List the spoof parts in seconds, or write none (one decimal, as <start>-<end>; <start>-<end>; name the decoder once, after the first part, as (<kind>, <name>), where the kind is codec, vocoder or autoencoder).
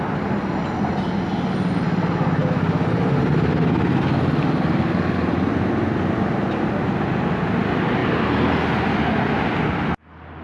none